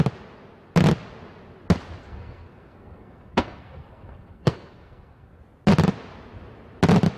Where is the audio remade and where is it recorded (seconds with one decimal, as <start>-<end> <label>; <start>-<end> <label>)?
0.0-2.0 recorded; 2.0-5.4 remade; 5.4-7.2 recorded